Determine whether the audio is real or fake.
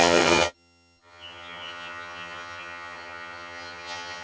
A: fake